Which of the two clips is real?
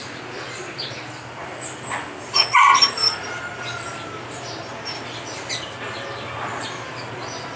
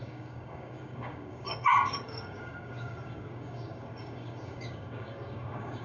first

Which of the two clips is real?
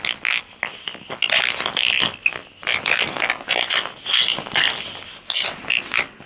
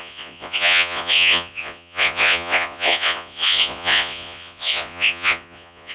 first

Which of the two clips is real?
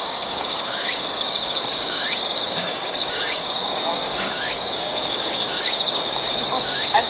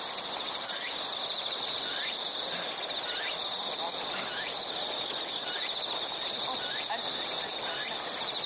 second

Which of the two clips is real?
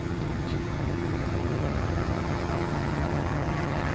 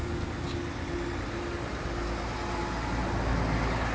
second